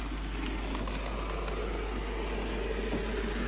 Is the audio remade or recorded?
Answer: recorded